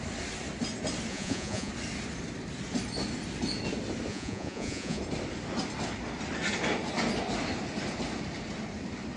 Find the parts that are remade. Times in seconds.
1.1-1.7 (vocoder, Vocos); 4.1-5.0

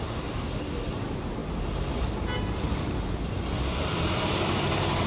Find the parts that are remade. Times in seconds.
none